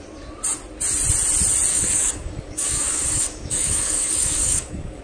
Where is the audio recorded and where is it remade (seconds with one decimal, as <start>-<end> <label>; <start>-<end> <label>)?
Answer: 0.0-1.7 recorded; 1.7-5.0 remade

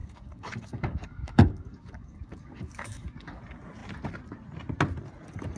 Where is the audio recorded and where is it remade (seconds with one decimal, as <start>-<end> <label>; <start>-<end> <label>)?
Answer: 0.0-3.4 remade; 3.4-5.6 recorded

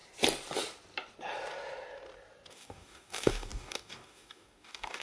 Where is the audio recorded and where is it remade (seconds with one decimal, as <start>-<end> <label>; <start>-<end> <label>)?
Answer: 0.0-2.5 recorded; 2.5-5.0 remade